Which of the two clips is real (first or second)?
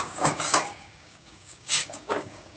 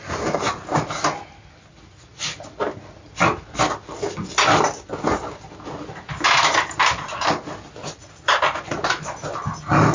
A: second